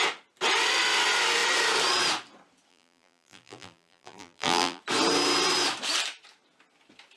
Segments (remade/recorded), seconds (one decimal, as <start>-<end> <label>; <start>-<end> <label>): 0.0-2.7 recorded; 2.7-4.8 remade; 4.8-7.2 recorded